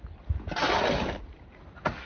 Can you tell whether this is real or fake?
real